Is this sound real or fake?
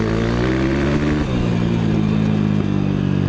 real